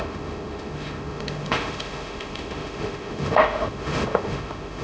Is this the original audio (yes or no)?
no